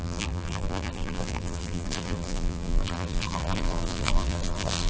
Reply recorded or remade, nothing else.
remade